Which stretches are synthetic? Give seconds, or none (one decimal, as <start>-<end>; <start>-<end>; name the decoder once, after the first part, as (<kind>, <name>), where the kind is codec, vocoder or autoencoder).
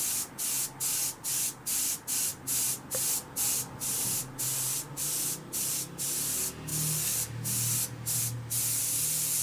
none